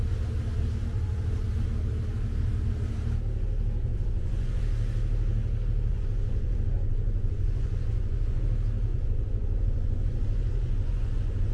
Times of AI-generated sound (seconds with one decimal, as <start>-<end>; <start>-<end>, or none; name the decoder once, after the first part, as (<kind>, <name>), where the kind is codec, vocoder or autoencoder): 3.8-4.6 (vocoder, Vocos); 5.9-8.4; 8.9-11.5